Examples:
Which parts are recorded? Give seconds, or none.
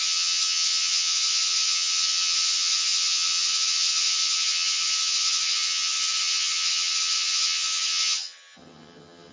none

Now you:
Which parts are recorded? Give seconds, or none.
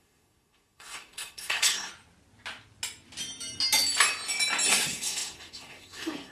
1.9-4.7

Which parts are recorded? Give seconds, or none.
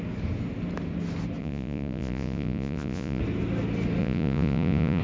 0.0-1.4; 3.2-4.0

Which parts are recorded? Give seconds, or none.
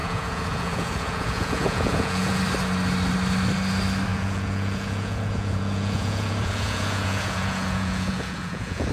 2.4-4.1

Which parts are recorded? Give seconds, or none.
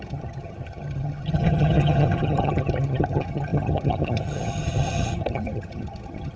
none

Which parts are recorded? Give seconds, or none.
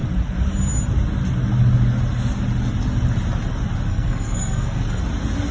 0.0-3.9; 5.0-5.5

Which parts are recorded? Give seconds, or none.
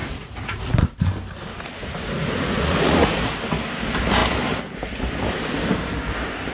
0.9-1.8; 3.2-6.5